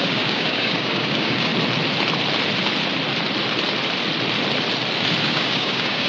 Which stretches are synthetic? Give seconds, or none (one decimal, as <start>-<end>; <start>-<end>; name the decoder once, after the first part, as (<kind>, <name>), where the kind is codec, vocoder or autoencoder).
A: 0.0-1.5 (codec, DAC); 5.2-6.1